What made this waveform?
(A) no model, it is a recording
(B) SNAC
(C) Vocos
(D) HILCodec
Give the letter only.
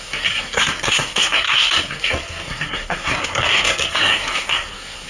B